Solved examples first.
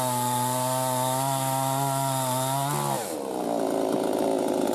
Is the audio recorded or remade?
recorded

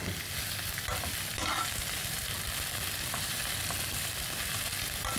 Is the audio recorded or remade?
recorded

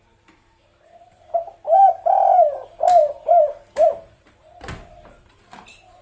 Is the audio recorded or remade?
remade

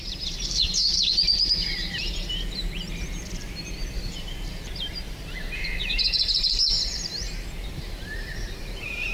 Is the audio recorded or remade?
remade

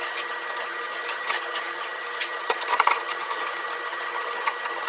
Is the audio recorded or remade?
remade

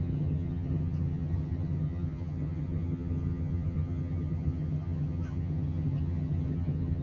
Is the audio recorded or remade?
remade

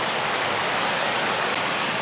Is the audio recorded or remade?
remade